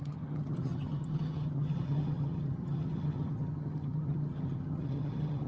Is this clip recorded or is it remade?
remade